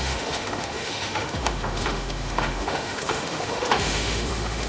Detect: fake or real fake